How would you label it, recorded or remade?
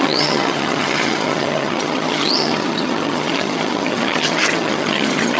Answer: remade